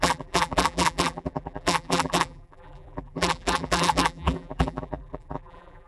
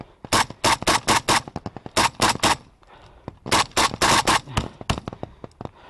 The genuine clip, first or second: second